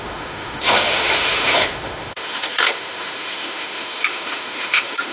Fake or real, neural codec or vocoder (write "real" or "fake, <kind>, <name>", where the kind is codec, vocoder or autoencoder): fake, autoencoder, DAC-VAE